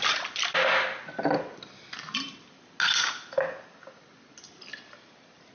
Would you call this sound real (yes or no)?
yes